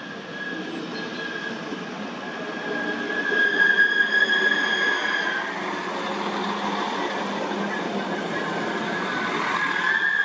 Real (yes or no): yes